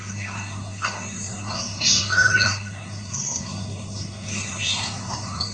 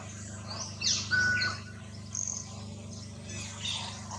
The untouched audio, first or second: second